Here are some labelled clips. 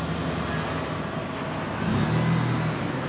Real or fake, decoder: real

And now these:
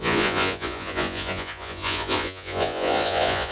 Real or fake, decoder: fake, vocoder, Vocos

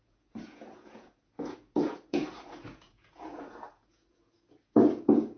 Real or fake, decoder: fake, vocoder, Vocos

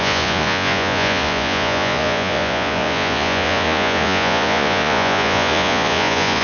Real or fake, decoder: fake, vocoder, Vocos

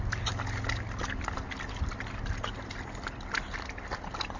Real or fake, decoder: real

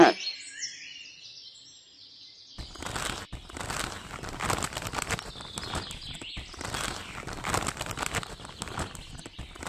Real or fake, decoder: real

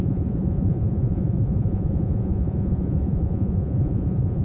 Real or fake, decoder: fake, vocoder, Vocos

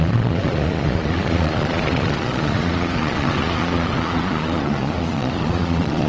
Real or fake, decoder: fake, vocoder, Vocos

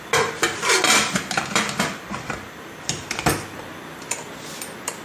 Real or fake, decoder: real